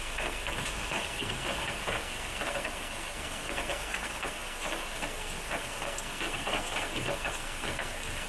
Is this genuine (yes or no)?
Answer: no